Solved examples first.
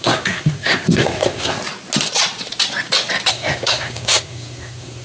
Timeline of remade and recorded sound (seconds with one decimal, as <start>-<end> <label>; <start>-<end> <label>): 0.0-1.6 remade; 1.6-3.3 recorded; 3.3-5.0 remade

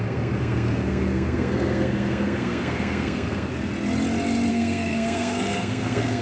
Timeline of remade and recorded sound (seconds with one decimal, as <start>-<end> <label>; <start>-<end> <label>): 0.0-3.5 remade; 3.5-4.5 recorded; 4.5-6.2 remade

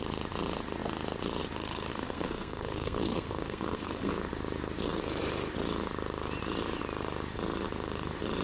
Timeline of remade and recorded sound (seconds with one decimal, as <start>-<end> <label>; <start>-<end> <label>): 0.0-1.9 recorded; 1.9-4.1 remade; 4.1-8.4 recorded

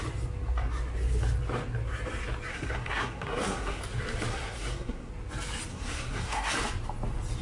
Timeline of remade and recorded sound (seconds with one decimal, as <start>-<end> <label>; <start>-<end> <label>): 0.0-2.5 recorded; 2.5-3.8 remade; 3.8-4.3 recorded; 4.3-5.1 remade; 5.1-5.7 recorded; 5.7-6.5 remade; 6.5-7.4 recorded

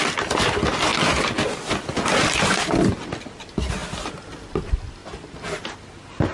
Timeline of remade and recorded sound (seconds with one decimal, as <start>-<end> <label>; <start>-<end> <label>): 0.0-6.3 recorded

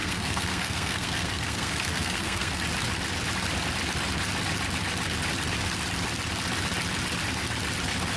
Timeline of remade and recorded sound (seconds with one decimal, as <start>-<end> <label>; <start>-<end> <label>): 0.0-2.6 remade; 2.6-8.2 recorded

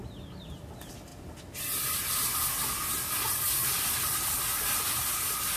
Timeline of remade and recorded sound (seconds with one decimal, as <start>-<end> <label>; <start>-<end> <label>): 0.0-5.6 recorded